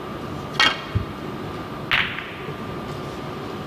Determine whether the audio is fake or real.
real